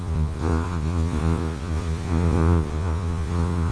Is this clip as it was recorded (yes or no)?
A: no